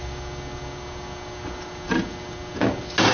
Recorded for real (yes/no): yes